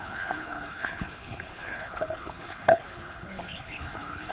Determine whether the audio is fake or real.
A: fake